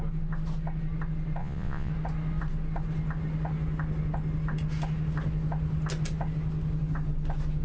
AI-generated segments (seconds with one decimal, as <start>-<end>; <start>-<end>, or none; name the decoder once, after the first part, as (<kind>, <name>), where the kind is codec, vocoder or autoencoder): 1.4-1.9 (vocoder, Vocos)